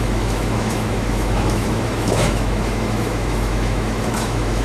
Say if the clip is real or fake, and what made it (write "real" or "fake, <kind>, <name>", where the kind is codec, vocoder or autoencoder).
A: fake, autoencoder, DAC-VAE